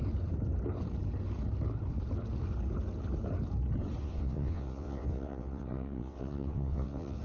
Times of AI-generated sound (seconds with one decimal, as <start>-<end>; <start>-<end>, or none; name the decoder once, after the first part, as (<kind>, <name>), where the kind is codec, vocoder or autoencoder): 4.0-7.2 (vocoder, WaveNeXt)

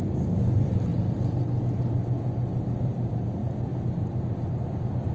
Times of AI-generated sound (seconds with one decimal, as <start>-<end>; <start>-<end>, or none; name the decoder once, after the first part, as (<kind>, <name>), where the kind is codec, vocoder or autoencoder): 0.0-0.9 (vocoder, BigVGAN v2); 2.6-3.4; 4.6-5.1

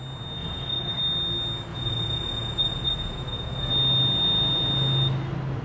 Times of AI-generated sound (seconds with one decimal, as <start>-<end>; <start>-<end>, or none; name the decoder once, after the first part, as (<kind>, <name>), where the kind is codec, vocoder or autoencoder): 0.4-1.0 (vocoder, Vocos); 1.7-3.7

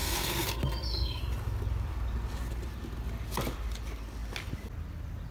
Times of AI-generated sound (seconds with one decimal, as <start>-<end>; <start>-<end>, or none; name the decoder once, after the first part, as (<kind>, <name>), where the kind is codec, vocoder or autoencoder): 0.0-1.2 (codec, SNAC)

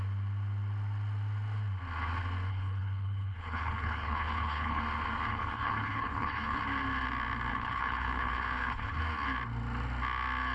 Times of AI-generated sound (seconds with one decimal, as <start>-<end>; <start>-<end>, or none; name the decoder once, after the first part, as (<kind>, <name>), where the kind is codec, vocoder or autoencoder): 2.5-4.8 (codec, HILCodec); 5.3-6.6; 7.5-9.0